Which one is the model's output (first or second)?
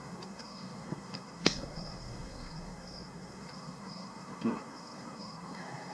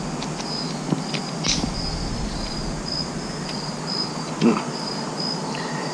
first